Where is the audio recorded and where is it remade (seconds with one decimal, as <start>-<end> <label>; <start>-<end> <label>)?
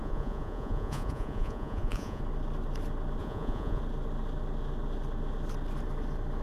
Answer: 0.0-2.2 remade; 2.2-3.2 recorded; 3.2-3.8 remade; 3.8-6.4 recorded